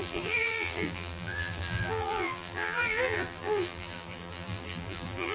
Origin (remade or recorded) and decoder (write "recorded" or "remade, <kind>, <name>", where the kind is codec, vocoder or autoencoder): remade, vocoder, BigVGAN v2